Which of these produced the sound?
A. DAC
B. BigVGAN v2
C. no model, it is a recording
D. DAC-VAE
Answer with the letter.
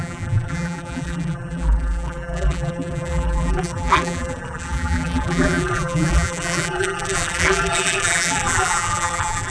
B